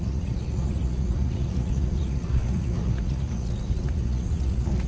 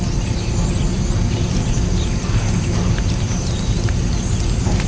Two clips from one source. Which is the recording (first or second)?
second